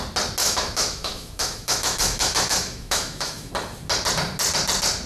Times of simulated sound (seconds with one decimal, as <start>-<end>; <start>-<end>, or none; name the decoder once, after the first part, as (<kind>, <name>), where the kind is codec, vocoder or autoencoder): 0.4-3.5 (autoencoder, DAC-VAE)